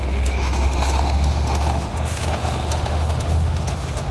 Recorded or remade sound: remade